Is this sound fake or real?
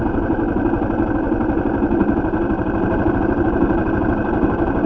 real